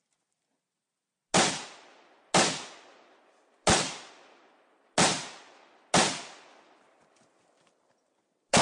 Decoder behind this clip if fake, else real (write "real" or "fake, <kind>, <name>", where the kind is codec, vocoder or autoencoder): real